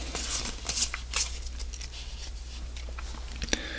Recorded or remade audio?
recorded